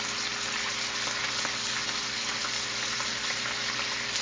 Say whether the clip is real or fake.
real